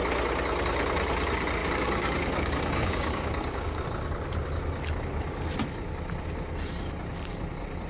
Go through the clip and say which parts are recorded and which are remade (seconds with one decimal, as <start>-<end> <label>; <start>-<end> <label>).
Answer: 0.0-1.6 recorded; 1.6-3.8 remade; 3.8-7.9 recorded

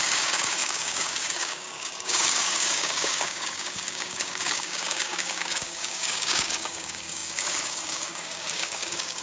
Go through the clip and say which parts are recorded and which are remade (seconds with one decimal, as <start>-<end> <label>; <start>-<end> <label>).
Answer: 0.0-9.2 remade

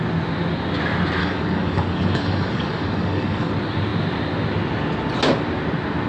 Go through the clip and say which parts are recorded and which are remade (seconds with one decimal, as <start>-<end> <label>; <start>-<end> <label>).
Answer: 0.0-1.2 recorded; 1.2-3.5 remade; 3.5-6.1 recorded

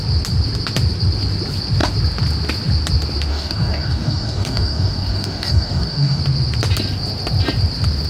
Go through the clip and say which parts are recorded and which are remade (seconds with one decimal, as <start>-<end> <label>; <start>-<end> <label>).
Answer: 0.0-3.3 recorded; 3.3-6.2 remade; 6.2-8.1 recorded

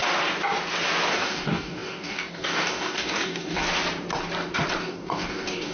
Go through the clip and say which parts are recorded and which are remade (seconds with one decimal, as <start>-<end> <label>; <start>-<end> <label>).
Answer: 0.0-1.1 recorded; 1.1-3.6 remade; 3.6-4.8 recorded; 4.8-5.7 remade